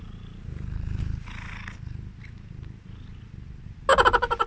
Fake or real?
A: real